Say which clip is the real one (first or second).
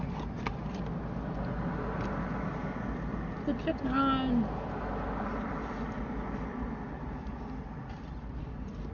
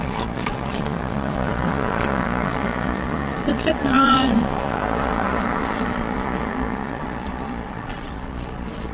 first